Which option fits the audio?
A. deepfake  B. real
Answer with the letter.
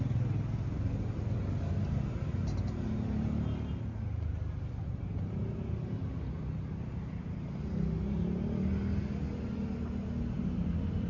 B